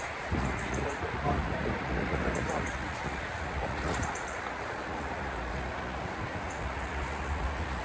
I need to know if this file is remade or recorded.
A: remade